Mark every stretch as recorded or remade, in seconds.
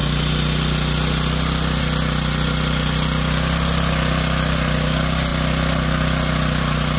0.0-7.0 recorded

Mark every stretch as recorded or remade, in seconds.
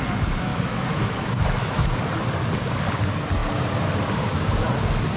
0.0-0.5 recorded; 0.5-2.0 remade; 2.0-5.2 recorded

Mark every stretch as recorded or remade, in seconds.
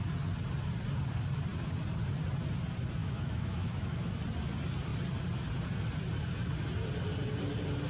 0.0-3.0 recorded; 3.0-4.2 remade; 4.2-7.9 recorded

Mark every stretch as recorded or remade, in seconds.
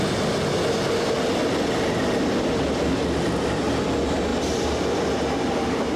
0.0-6.0 recorded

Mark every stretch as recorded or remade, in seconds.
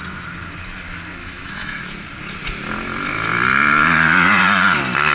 0.0-1.2 recorded; 1.2-1.8 remade; 1.8-5.1 recorded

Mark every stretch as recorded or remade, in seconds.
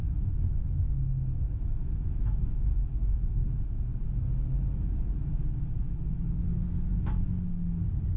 0.0-3.4 remade; 3.4-5.8 recorded; 5.8-6.5 remade; 6.5-8.2 recorded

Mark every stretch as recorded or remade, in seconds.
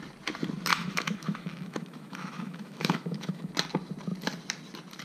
0.0-0.7 recorded; 0.7-3.5 remade; 3.5-5.0 recorded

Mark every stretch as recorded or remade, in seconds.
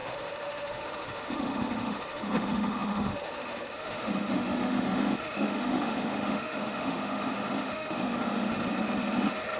0.0-8.5 remade; 8.5-9.6 recorded